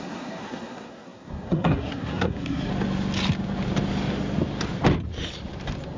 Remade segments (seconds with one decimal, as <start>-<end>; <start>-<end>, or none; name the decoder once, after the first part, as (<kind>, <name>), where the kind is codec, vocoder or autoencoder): 0.0-2.7 (codec, SNAC)